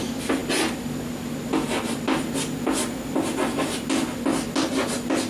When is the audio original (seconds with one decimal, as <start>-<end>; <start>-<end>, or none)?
0.0-5.3